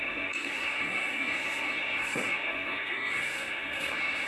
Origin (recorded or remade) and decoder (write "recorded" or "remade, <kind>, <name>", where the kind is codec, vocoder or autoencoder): remade, codec, SNAC